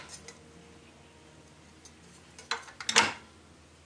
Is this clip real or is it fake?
real